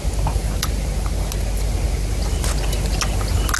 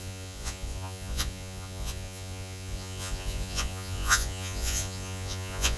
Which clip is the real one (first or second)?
first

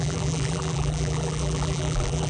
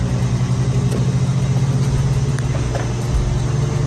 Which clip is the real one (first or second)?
second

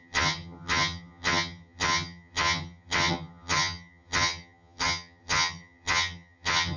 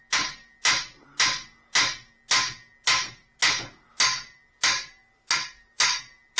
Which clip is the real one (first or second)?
second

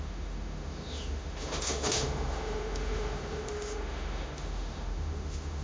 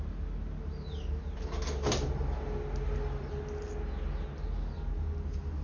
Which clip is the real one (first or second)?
second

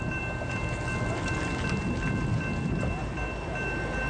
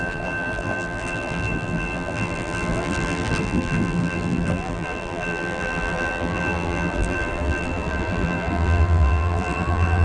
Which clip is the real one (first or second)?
first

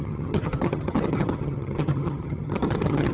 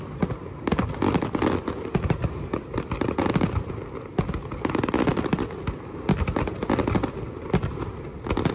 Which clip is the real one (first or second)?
second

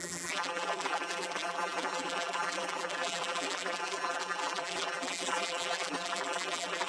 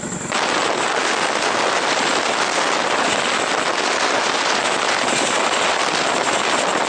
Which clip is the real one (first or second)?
second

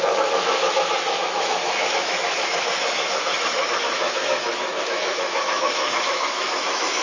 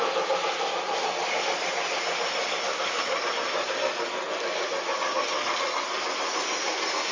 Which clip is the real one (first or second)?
second